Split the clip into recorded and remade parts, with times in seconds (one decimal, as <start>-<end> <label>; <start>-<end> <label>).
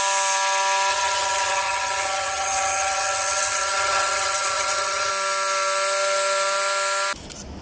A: 0.0-0.9 recorded; 0.9-5.1 remade; 5.1-7.6 recorded